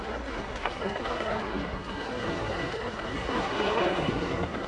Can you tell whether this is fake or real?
fake